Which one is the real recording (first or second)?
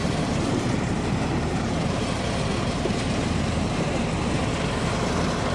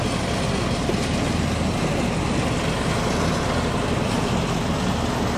second